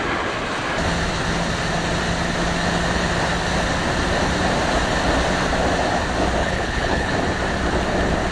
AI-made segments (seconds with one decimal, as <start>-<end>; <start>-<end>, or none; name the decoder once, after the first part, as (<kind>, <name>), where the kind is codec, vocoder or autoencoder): 6.4-7.1 (codec, HILCodec)